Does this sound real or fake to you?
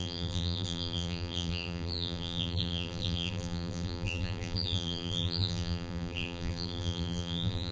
fake